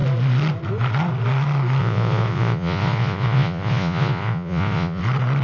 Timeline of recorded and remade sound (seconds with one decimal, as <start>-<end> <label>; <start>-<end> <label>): 0.0-1.8 recorded; 1.8-5.0 remade; 5.0-5.4 recorded